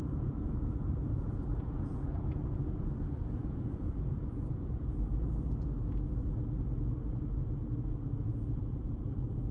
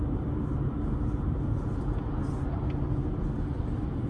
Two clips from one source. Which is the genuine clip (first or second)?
second